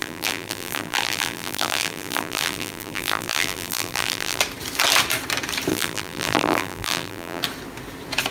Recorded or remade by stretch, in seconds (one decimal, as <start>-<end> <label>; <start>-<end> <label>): 0.0-4.4 remade; 4.4-5.7 recorded; 5.7-7.4 remade; 7.4-8.3 recorded